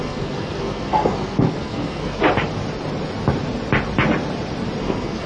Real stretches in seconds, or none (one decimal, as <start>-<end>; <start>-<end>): 2.2-4.8